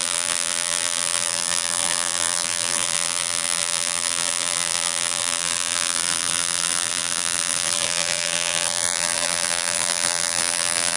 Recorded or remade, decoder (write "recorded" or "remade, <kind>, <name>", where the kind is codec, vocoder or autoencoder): remade, vocoder, BigVGAN v2